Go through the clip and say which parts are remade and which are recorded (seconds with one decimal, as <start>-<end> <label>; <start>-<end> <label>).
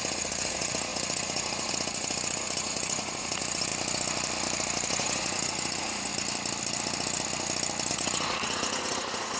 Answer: 0.0-3.7 remade; 3.7-4.9 recorded; 4.9-6.1 remade; 6.1-7.9 recorded; 7.9-9.4 remade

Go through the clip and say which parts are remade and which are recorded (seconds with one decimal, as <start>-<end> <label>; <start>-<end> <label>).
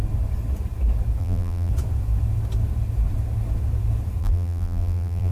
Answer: 0.0-1.2 recorded; 1.2-1.7 remade; 1.7-4.2 recorded; 4.2-5.3 remade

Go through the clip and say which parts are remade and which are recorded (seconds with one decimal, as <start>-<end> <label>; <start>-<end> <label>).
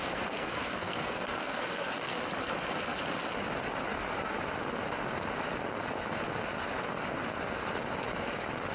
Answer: 0.0-2.2 remade; 2.2-8.7 recorded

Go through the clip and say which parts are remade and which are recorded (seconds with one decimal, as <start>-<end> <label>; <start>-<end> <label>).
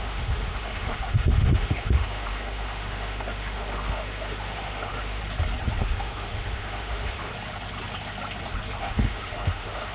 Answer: 0.0-5.2 remade; 5.2-5.8 recorded; 5.8-7.3 remade; 7.3-8.8 recorded; 8.8-9.9 remade